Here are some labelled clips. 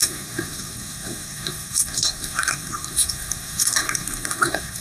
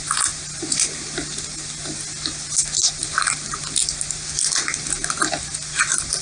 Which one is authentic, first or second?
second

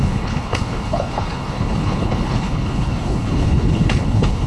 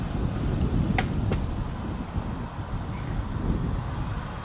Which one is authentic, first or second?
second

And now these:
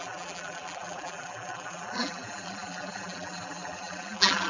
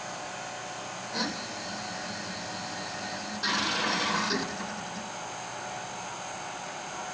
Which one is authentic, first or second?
second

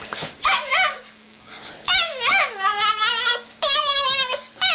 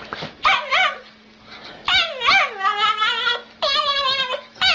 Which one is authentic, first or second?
second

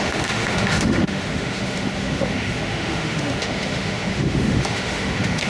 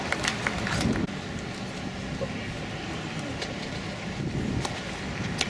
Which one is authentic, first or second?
second